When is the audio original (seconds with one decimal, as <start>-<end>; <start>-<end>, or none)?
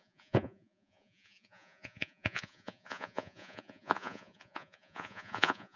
none